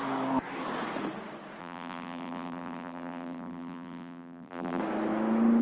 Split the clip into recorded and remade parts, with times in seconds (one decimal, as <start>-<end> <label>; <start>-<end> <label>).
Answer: 0.0-1.6 recorded; 1.6-4.8 remade; 4.8-5.6 recorded

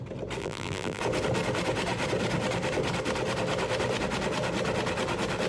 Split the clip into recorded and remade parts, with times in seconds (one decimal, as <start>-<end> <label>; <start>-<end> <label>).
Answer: 0.0-0.4 recorded; 0.4-1.0 remade; 1.0-5.5 recorded

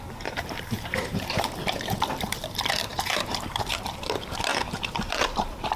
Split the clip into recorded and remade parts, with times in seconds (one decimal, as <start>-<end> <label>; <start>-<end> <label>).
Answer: 0.0-5.8 remade

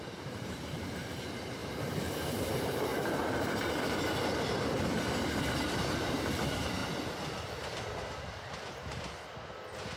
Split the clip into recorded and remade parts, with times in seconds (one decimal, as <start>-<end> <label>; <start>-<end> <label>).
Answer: 0.0-2.9 remade; 2.9-5.6 recorded; 5.6-6.8 remade; 6.8-10.0 recorded

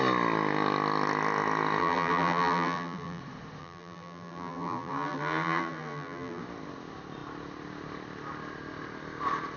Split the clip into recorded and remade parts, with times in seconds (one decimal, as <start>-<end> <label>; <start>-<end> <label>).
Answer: 0.0-1.8 recorded; 1.8-3.2 remade; 3.2-3.6 recorded; 3.6-6.4 remade; 6.4-9.6 recorded

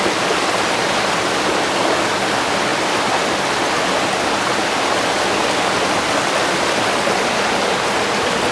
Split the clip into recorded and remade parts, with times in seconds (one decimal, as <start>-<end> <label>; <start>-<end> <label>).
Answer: 0.0-8.5 recorded

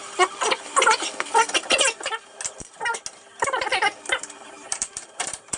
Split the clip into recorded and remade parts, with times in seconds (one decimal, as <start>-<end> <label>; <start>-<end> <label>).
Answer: 0.0-3.1 recorded; 3.1-5.6 remade

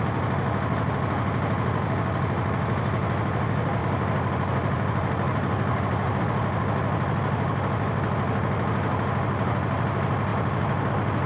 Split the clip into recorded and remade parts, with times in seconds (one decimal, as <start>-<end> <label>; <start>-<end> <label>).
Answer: 0.0-3.8 recorded; 3.8-6.2 remade; 6.2-11.3 recorded